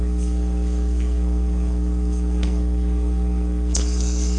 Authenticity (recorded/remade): remade